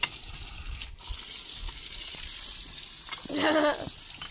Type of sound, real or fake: real